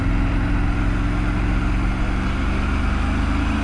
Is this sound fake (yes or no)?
no